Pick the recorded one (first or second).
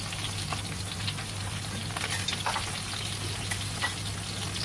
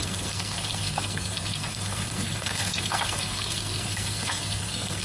first